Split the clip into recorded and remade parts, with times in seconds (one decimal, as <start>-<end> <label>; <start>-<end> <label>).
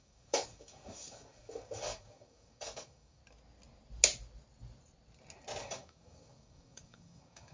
0.0-3.2 remade; 3.2-5.6 recorded; 5.6-7.5 remade